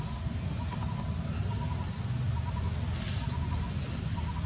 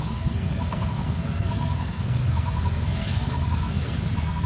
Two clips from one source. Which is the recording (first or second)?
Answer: first